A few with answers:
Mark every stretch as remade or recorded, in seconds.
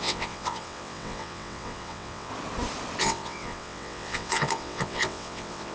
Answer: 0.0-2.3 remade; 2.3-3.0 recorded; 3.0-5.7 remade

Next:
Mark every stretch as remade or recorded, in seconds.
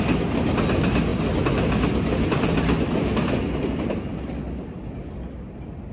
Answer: 0.0-5.9 recorded